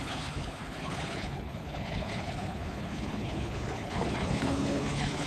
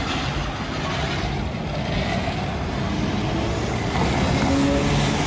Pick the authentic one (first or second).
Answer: second